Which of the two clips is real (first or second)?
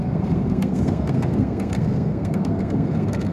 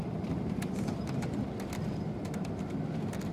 second